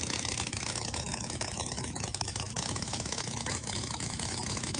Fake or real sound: fake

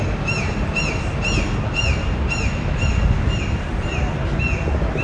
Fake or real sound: real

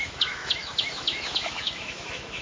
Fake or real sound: fake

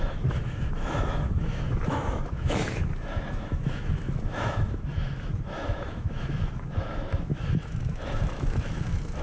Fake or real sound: fake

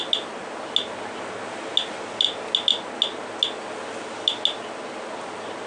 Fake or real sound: real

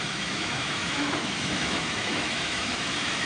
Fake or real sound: fake